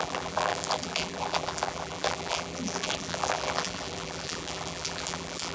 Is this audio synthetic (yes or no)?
yes